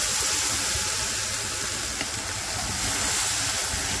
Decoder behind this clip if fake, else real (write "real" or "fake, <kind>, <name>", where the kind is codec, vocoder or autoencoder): real